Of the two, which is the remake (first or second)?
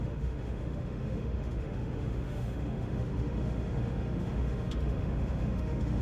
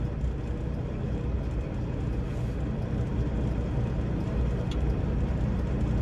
first